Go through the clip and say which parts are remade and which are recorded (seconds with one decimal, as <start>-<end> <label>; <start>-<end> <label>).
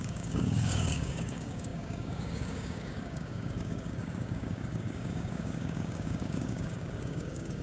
0.0-7.6 remade